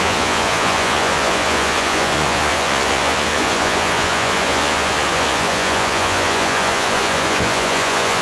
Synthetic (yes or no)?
yes